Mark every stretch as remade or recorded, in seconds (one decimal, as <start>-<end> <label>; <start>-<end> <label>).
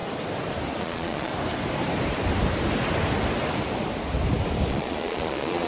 0.0-0.8 recorded; 0.8-1.3 remade; 1.3-4.7 recorded; 4.7-5.7 remade